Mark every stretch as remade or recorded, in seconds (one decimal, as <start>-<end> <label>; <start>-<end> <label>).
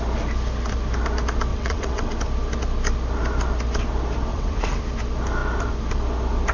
0.0-1.5 recorded; 1.5-2.1 remade; 2.1-4.3 recorded; 4.3-4.8 remade; 4.8-6.5 recorded